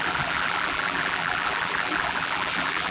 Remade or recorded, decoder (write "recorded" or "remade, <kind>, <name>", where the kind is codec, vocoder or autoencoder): remade, vocoder, BigVGAN v2